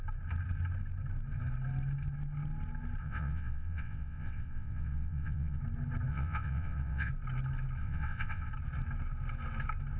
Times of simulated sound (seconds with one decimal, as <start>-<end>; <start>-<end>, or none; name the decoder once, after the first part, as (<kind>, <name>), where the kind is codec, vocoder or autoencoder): 3.0-5.6 (vocoder, WaveNeXt); 6.1-7.1; 7.8-8.5